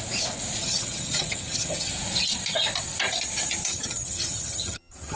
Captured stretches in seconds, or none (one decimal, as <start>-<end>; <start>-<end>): 0.0-0.6; 1.9-3.6